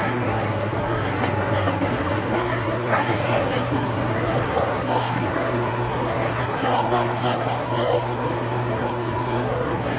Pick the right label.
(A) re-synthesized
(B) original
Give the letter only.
A